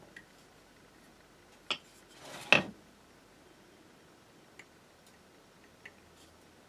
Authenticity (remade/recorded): recorded